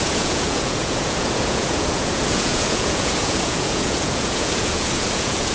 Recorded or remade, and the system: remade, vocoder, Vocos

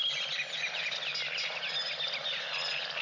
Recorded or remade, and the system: recorded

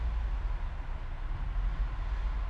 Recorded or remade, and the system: recorded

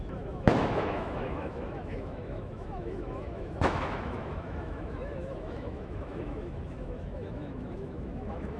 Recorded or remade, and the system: remade, autoencoder, DAC-VAE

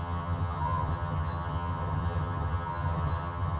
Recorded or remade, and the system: remade, vocoder, HiFi-GAN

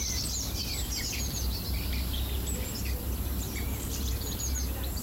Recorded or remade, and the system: remade, vocoder, BigVGAN v2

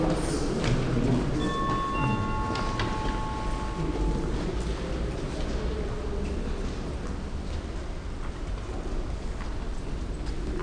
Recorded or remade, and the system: recorded